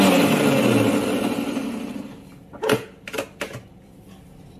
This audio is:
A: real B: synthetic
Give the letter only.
A